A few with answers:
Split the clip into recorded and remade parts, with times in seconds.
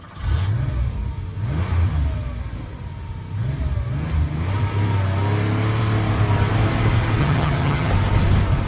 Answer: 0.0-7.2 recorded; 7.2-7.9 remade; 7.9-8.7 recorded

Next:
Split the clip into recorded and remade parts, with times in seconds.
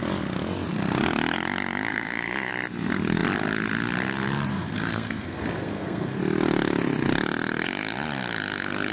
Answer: 0.0-1.9 recorded; 1.9-2.5 remade; 2.5-4.5 recorded; 4.5-6.2 remade; 6.2-8.9 recorded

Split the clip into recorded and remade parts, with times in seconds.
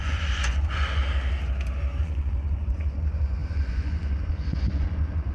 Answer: 0.0-1.0 remade; 1.0-2.0 recorded; 2.0-5.3 remade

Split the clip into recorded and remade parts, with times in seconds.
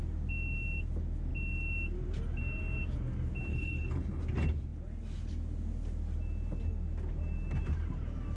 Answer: 0.0-3.5 recorded; 3.5-4.2 remade; 4.2-8.4 recorded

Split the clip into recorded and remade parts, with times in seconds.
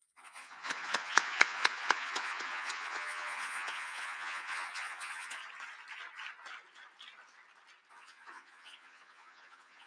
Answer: 0.0-5.4 remade; 5.4-7.9 recorded; 7.9-9.9 remade